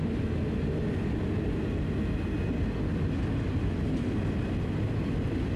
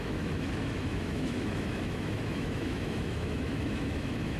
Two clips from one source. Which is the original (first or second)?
first